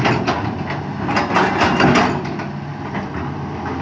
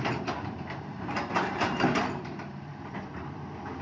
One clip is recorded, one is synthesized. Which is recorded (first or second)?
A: first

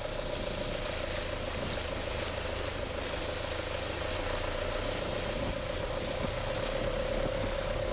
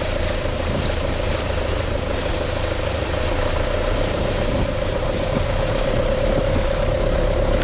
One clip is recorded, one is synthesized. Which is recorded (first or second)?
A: first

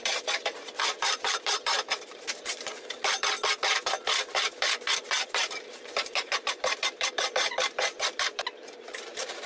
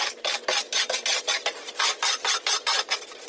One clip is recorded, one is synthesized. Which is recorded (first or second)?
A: second